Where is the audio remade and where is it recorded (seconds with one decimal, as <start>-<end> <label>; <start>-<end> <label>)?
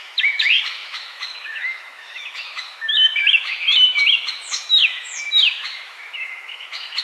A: 0.0-7.0 remade